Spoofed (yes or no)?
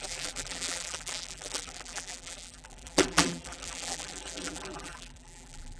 yes